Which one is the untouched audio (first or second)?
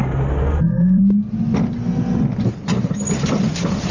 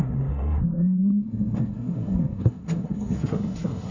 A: first